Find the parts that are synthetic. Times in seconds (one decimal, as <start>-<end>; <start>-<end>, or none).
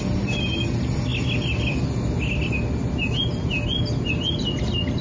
none